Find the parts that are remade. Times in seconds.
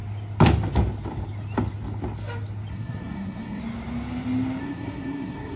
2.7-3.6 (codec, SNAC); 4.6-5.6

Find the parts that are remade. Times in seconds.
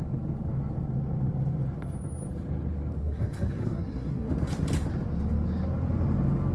3.0-4.3 (codec, SNAC)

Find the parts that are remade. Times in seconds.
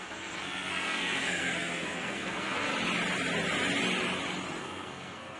0.0-2.7 (codec, SNAC); 4.6-5.4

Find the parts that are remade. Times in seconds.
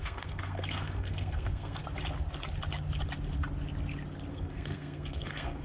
0.0-1.8 (codec, SNAC); 4.3-5.6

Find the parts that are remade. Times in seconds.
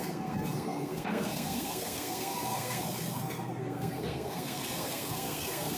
0.0-5.8 (codec, SNAC)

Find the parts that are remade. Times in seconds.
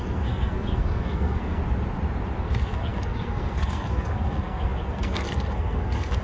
0.0-1.6 (codec, SNAC); 2.4-6.2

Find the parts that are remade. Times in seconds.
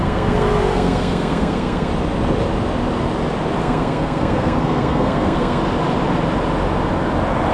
0.0-1.9 (codec, SNAC); 3.6-5.6